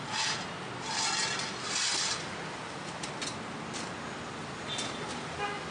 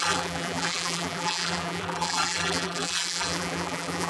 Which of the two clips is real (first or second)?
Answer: first